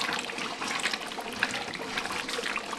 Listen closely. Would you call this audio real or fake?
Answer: real